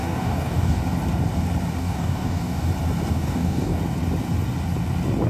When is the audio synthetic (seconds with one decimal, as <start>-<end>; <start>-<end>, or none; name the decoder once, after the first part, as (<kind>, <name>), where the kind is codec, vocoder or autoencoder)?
0.0-0.8 (codec, DAC); 1.8-2.7; 3.1-3.8